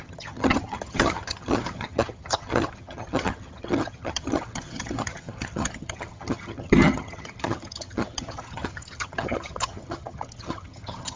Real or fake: fake